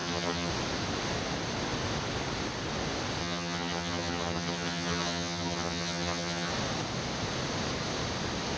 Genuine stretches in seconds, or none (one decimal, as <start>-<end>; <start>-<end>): 0.5-3.2; 6.5-8.6